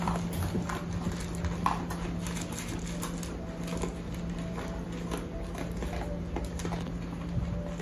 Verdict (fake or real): real